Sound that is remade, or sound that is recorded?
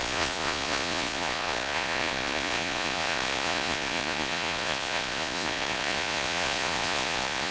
remade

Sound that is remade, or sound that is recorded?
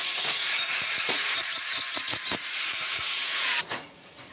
remade